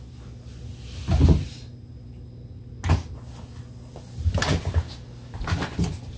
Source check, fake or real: real